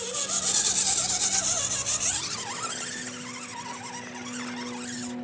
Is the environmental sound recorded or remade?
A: recorded